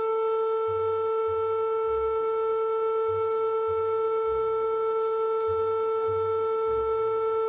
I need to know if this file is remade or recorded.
recorded